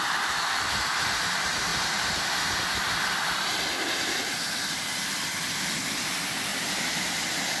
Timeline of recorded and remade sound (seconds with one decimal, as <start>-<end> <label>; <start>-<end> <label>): 0.0-1.7 remade; 1.7-6.0 recorded; 6.0-6.5 remade; 6.5-7.6 recorded